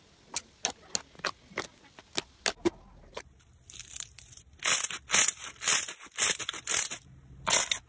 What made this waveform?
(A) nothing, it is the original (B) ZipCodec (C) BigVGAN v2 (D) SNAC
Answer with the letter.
A